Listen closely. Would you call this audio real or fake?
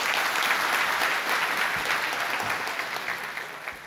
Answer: real